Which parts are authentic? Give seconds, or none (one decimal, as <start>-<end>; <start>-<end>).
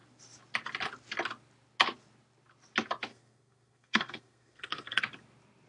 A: 0.0-3.1; 5.0-5.7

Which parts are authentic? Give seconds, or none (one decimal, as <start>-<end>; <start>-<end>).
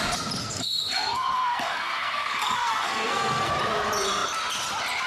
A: 0.0-0.4; 3.5-5.1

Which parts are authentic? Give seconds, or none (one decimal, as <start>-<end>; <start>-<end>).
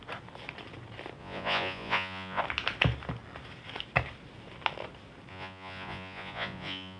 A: 0.0-1.2; 2.4-5.3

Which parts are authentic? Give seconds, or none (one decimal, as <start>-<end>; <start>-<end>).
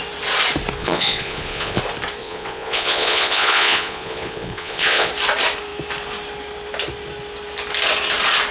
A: 0.0-0.8; 1.8-2.2; 5.1-8.5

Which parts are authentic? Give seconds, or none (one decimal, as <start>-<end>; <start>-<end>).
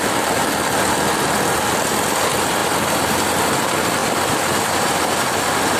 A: 0.0-4.0